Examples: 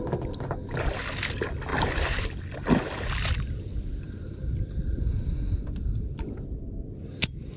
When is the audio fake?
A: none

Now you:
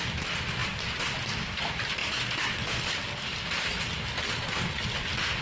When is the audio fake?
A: 0.6-1.2 (vocoder, BigVGAN v2)

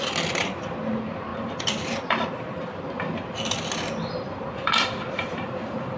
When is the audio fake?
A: 0.0-0.4 (vocoder, BigVGAN v2); 0.9-6.0

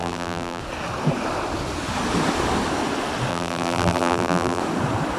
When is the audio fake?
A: 0.0-0.6 (vocoder, BigVGAN v2); 3.3-4.6

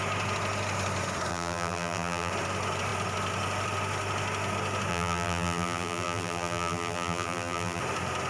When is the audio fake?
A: 1.3-2.3 (vocoder, BigVGAN v2); 4.9-7.8

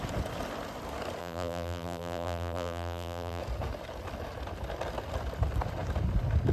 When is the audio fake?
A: 1.2-3.4 (vocoder, BigVGAN v2)

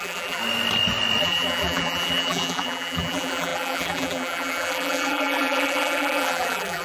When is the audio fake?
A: 0.0-0.4 (vocoder, BigVGAN v2); 1.2-6.8